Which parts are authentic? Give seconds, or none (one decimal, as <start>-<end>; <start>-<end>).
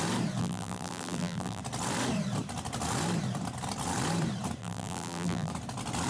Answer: 0.0-0.4; 1.6-4.6; 5.5-6.1